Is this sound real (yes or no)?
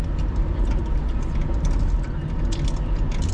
yes